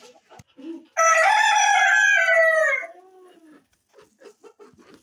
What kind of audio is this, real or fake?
real